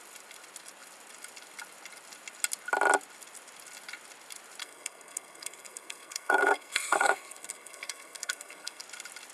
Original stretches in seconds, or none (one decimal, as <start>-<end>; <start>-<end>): 0.0-4.6; 8.8-9.3